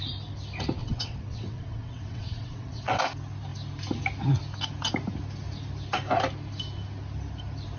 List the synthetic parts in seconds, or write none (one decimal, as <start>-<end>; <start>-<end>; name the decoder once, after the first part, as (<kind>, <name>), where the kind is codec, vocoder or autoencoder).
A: 0.8-3.0 (vocoder, WaveNeXt)